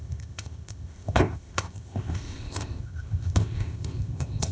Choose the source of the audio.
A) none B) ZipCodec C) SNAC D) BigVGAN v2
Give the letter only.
B